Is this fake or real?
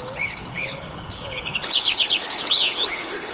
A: fake